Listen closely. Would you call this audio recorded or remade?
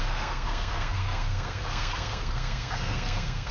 remade